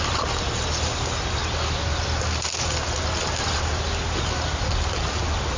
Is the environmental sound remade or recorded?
recorded